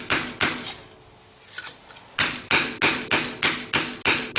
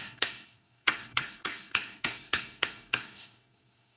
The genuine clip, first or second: first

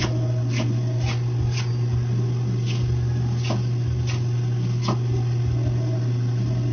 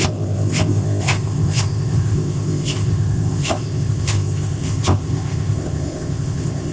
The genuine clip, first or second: first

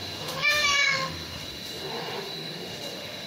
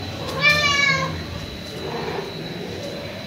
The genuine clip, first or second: second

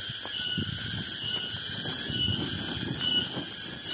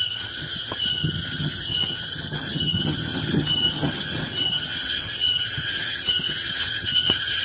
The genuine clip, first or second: first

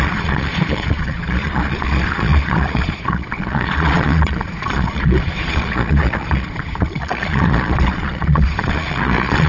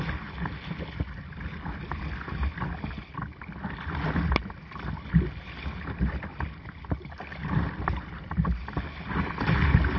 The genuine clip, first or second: second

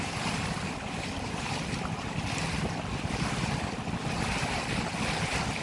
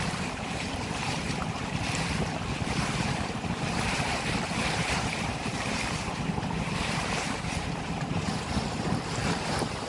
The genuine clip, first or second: first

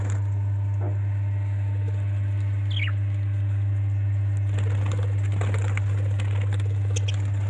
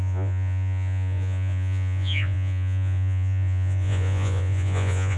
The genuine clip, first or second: first